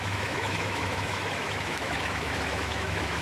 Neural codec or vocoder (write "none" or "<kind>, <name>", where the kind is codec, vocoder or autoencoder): autoencoder, DAC-VAE